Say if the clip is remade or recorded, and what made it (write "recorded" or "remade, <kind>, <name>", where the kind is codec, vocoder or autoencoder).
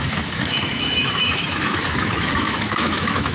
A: remade, autoencoder, DAC-VAE